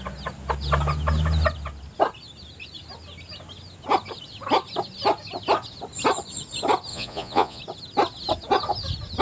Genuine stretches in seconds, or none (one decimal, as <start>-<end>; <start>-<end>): 0.0-6.9; 7.6-9.2